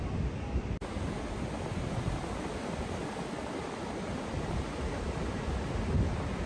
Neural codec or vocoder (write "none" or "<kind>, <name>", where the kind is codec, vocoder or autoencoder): none